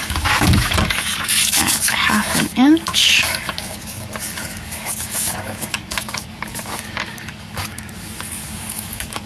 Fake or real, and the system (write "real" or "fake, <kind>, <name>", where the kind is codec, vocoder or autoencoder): fake, codec, DAC